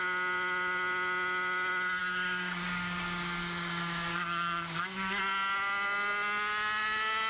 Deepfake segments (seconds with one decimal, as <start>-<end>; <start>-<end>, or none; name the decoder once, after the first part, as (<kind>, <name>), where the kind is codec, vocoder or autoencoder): 2.0-5.2 (codec, DAC)